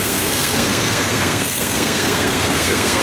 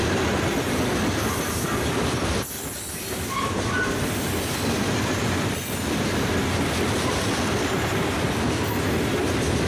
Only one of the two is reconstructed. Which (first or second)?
first